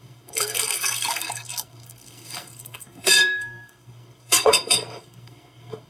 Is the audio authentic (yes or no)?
no